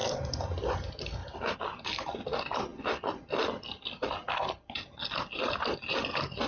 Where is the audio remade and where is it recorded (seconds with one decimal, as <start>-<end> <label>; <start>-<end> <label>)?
0.0-6.5 recorded